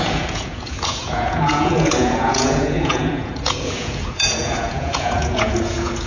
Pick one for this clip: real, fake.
fake